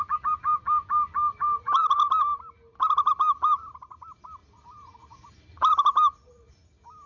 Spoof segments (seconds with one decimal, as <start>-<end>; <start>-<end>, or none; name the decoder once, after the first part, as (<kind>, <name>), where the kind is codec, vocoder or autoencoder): none